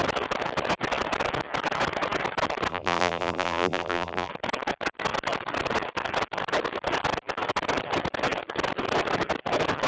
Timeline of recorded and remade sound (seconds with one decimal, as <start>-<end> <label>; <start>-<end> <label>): 0.0-2.7 recorded; 2.7-4.3 remade; 4.3-9.9 recorded